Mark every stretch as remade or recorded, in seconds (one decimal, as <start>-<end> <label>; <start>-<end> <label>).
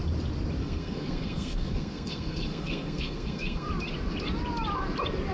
0.0-0.6 recorded; 0.6-3.7 remade; 3.7-5.3 recorded